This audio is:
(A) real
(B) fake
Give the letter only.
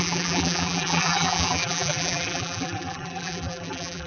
B